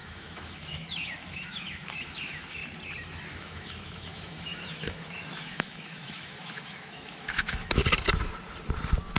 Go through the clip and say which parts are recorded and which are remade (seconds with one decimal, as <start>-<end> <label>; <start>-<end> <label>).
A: 0.0-2.6 remade; 2.6-3.3 recorded; 3.3-7.8 remade; 7.8-9.2 recorded